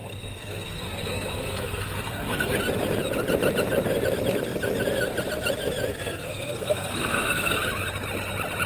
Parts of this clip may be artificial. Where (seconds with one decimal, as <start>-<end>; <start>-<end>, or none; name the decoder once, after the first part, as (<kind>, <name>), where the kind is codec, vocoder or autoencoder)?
0.0-2.6 (codec, SNAC); 5.9-7.6